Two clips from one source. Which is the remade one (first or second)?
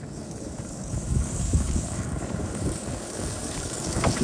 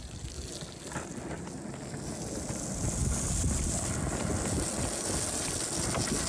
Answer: first